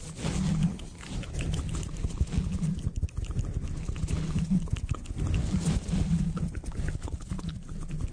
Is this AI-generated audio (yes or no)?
no